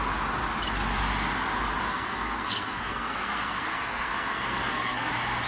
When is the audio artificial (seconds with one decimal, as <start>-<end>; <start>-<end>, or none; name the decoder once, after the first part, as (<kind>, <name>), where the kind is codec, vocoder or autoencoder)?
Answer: 1.8-5.1 (codec, SNAC)